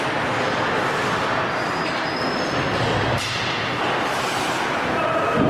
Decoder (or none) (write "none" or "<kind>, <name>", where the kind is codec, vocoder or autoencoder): none